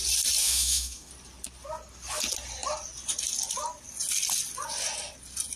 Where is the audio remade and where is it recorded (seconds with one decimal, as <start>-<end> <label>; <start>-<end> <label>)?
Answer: 0.0-0.4 recorded; 0.4-1.1 remade; 1.1-5.6 recorded